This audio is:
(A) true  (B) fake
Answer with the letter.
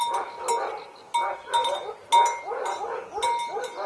A